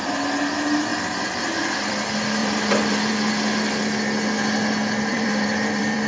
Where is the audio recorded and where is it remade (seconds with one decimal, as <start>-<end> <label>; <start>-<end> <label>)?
0.0-0.9 recorded; 0.9-1.9 remade; 1.9-2.4 recorded; 2.4-3.1 remade; 3.1-5.1 recorded; 5.1-6.1 remade